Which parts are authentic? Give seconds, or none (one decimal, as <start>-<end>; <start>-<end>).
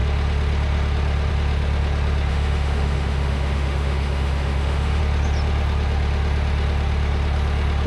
0.0-2.3; 5.0-7.9